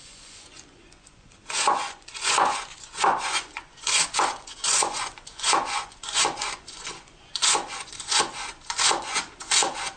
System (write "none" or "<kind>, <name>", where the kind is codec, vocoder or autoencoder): vocoder, Vocos